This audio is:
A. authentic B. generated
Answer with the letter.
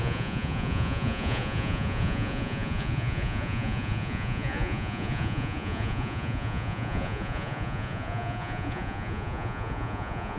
B